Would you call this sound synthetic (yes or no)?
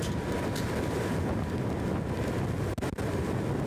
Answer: no